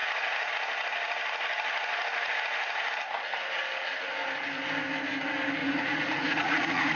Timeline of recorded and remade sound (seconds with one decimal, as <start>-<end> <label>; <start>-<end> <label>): 0.0-0.5 remade; 0.5-5.6 recorded; 5.6-7.0 remade